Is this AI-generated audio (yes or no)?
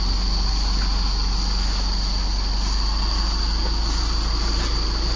no